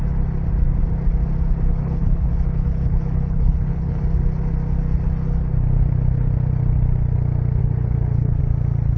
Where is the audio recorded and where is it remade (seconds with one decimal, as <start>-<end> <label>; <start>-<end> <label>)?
0.0-1.7 recorded; 1.7-4.0 remade; 4.0-7.6 recorded; 7.6-8.4 remade; 8.4-9.0 recorded